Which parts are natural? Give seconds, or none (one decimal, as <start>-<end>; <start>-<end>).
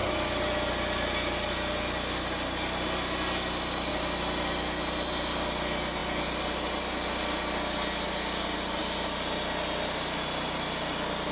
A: 0.0-11.3